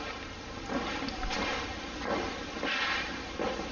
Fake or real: real